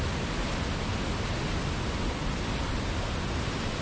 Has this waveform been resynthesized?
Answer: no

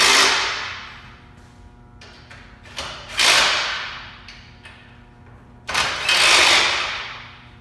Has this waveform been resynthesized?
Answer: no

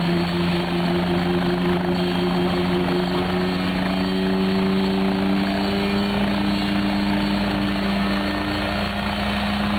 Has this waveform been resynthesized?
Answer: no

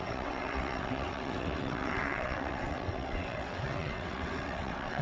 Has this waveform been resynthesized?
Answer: yes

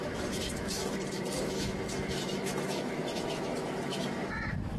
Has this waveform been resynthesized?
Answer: yes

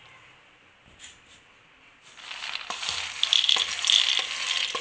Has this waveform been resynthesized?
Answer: no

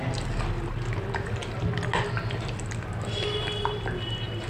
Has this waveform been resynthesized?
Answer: no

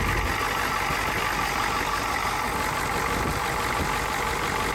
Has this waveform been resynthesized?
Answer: no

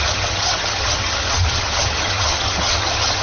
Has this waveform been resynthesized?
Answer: yes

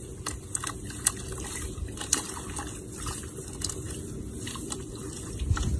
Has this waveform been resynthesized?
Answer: no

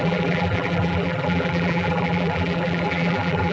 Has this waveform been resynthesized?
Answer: yes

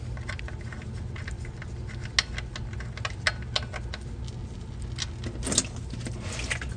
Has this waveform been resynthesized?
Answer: no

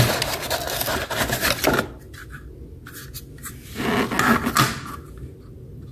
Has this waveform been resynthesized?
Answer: no